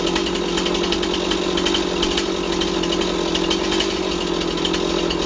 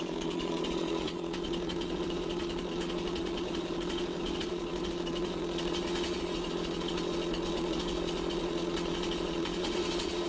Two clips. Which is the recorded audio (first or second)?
first